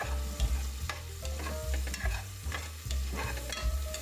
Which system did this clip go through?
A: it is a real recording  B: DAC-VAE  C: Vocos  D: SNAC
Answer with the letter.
A